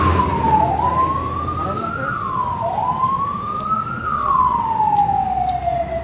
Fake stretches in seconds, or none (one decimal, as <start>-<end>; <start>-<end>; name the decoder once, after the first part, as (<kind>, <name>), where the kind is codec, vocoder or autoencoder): 4.1-4.7 (vocoder, WaveNeXt)